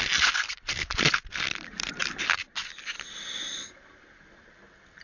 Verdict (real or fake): real